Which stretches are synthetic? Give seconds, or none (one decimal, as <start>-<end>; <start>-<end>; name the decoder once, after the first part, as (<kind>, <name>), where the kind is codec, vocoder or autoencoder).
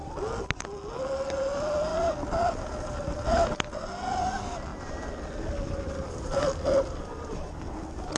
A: none